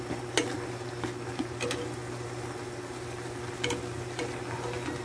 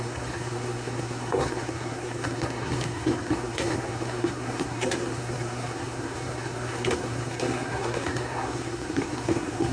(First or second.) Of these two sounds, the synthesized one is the second